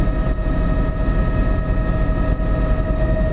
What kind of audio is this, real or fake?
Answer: real